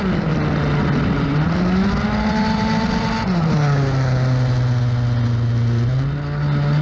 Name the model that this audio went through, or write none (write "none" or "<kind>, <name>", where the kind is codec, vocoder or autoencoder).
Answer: none